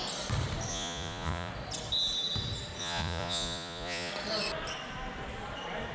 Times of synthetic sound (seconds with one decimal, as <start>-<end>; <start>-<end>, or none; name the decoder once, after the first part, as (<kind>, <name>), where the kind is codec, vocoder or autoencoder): 0.7-1.5 (vocoder, Vocos); 2.8-4.1